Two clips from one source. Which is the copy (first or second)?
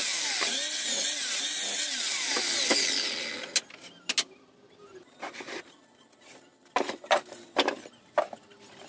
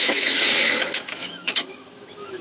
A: second